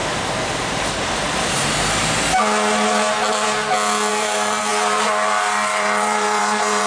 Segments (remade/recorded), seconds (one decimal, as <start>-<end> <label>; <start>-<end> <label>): 0.0-4.1 recorded; 4.1-6.9 remade